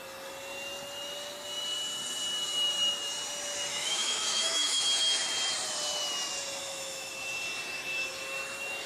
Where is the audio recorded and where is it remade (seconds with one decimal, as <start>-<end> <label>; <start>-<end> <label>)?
0.0-3.7 recorded; 3.7-4.8 remade; 4.8-6.6 recorded; 6.6-7.1 remade; 7.1-8.9 recorded